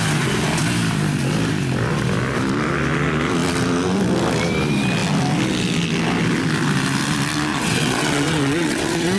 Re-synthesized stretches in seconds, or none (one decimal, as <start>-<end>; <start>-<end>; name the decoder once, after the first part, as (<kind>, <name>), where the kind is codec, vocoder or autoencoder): 7.5-9.2 (vocoder, WaveNeXt)